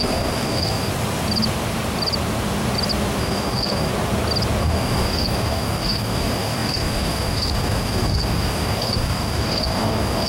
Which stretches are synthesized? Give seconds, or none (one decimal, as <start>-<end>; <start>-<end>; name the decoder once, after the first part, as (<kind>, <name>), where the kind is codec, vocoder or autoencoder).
0.0-0.9 (codec, DAC); 3.2-3.9; 4.6-10.3